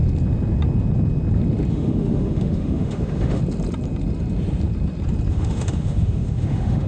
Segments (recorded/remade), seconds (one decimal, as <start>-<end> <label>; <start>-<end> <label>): 0.0-1.7 recorded; 1.7-3.4 remade; 3.4-5.3 recorded; 5.3-6.9 remade